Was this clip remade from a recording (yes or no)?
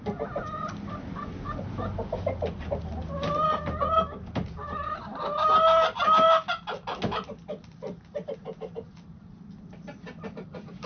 no